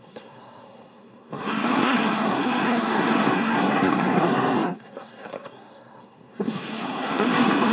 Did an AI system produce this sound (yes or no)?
yes